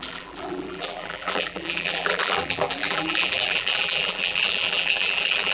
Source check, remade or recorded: remade